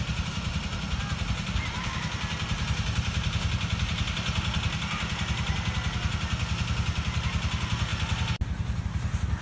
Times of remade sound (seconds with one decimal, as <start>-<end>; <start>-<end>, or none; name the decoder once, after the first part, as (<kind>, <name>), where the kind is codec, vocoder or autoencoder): none